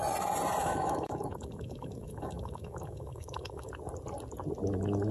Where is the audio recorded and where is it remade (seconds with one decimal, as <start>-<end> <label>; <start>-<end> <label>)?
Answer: 0.0-0.6 recorded; 0.6-3.7 remade; 3.7-5.1 recorded